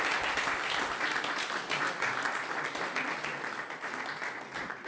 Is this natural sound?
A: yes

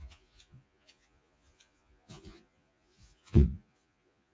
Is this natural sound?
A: no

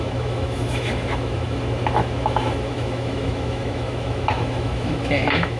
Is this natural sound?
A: no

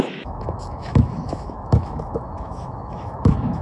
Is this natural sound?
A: no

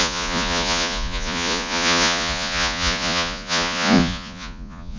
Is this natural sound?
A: no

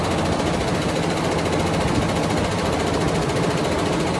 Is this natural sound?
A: yes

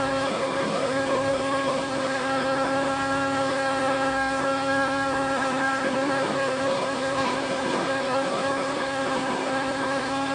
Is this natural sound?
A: no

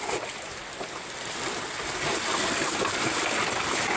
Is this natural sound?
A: no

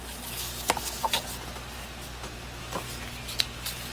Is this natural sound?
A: yes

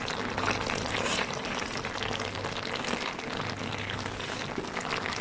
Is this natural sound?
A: no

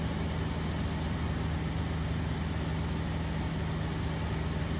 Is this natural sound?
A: yes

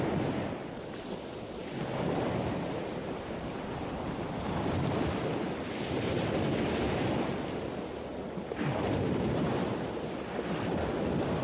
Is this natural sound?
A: yes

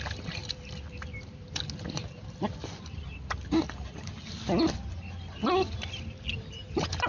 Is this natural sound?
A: yes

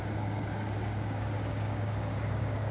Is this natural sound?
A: no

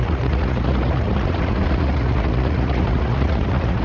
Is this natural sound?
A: no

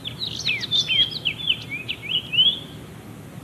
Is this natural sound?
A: yes